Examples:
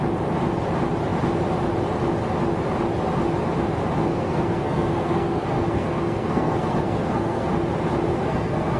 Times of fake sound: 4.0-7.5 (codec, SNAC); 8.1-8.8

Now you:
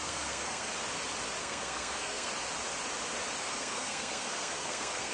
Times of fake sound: 0.0-0.7 (codec, SNAC); 1.4-2.3; 3.4-5.1

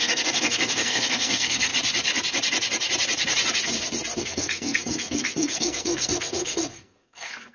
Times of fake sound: 0.0-1.7 (codec, SNAC); 4.2-7.5

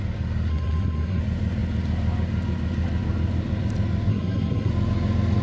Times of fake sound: 0.5-1.2 (codec, SNAC); 4.1-4.7